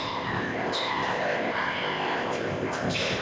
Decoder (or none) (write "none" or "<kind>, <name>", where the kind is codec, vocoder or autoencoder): codec, ZipCodec